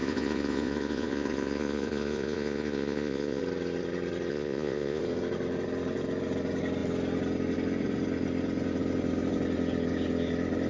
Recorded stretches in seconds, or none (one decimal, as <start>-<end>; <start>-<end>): 3.4-4.3; 5.0-10.7